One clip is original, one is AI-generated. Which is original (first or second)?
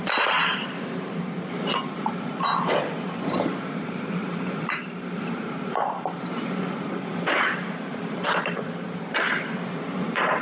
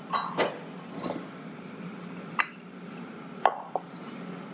second